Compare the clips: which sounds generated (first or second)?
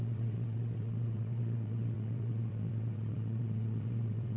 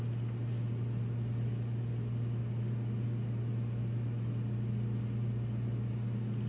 first